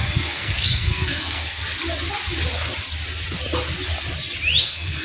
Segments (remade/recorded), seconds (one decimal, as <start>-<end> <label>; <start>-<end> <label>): 0.0-1.6 remade; 1.6-4.6 recorded; 4.6-5.0 remade